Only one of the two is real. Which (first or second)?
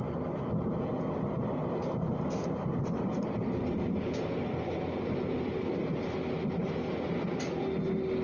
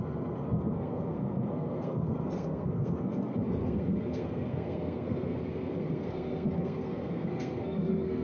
first